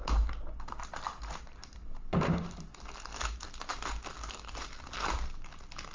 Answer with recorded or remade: recorded